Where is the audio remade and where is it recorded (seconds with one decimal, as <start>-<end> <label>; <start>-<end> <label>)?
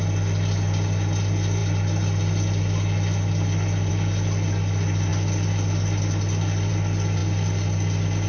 0.0-8.3 recorded